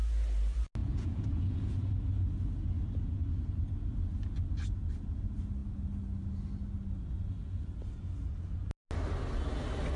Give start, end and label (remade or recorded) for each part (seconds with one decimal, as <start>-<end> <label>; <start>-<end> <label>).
0.0-0.8 recorded; 0.8-1.9 remade; 1.9-10.0 recorded